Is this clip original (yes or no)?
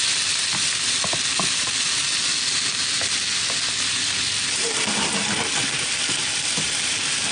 yes